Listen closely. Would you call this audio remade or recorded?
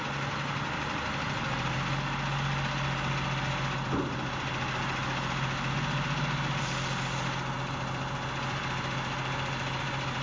recorded